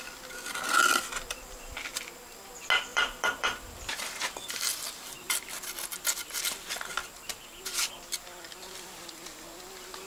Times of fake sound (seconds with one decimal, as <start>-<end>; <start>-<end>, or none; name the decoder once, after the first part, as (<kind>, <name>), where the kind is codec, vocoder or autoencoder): 2.9-3.6 (vocoder, BigVGAN v2)

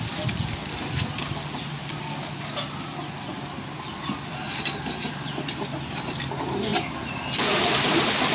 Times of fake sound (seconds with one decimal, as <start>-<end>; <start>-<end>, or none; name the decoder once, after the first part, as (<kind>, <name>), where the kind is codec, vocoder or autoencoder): none

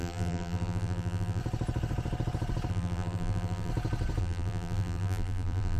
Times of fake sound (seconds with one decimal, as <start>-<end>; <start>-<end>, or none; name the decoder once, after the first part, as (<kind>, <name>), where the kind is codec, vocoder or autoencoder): 0.0-1.4 (vocoder, BigVGAN v2); 2.7-3.7; 4.2-5.8

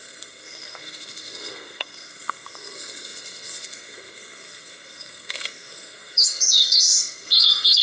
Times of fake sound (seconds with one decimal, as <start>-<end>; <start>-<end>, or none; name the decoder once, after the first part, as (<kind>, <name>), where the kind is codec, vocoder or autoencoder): 0.0-7.8 (codec, SNAC)

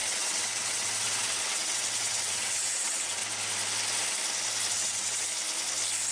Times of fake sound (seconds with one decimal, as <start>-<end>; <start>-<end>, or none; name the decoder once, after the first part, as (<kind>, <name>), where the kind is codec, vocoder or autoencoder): 0.0-3.2 (vocoder, WaveNeXt); 4.7-5.3

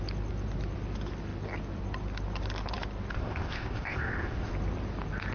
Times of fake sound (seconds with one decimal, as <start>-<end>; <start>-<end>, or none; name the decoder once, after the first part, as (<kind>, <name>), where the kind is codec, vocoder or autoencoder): 3.1-4.5 (codec, ZipCodec)

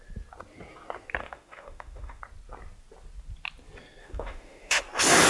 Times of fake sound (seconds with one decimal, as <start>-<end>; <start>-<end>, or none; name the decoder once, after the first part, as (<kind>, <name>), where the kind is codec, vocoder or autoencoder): 1.2-2.2 (autoencoder, DAC-VAE); 4.0-4.8